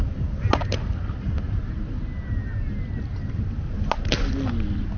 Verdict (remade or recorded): recorded